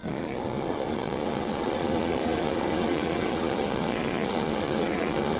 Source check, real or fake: fake